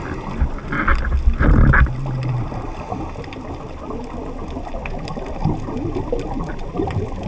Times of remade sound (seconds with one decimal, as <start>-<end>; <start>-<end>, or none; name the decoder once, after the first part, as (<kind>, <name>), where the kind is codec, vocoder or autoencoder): none